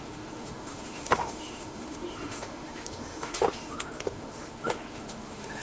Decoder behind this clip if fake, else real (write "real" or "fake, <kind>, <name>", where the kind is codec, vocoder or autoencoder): fake, autoencoder, DAC-VAE